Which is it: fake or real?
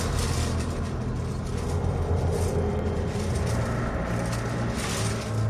real